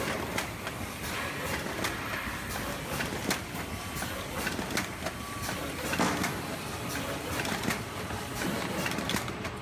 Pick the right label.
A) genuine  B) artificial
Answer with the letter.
B